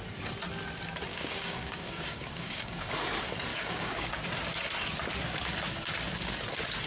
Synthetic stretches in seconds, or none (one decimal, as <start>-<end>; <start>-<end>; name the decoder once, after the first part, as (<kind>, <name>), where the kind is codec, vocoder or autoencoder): 1.1-2.9 (codec, DAC); 3.5-4.1